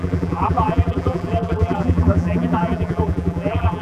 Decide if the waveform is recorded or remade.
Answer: remade